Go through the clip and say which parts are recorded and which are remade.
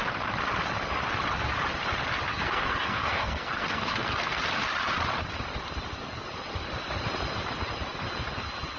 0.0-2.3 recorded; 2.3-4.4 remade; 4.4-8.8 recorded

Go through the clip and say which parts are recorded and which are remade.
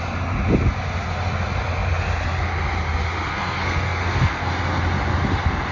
0.0-3.3 recorded; 3.3-4.5 remade; 4.5-5.7 recorded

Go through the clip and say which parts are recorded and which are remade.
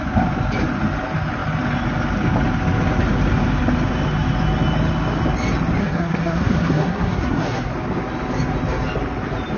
0.0-5.8 recorded; 5.8-7.7 remade; 7.7-9.6 recorded